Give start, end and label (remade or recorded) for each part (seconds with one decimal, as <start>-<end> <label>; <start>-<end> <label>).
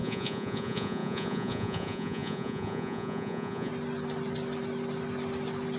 0.0-3.7 remade; 3.7-5.8 recorded